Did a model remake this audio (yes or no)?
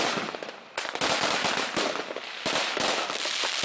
no